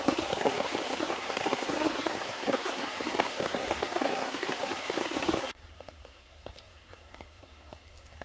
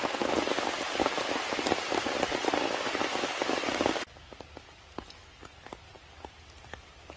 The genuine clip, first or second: second